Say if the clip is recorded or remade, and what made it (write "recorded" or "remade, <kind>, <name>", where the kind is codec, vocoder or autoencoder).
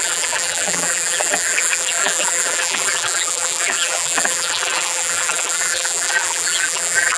remade, vocoder, BigVGAN v2